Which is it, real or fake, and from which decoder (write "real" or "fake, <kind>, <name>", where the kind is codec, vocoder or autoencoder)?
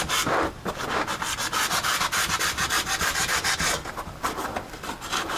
fake, vocoder, BigVGAN v2